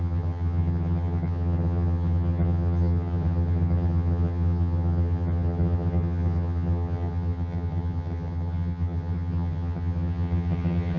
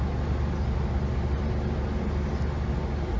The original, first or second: second